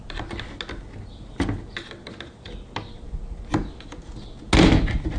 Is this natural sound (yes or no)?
yes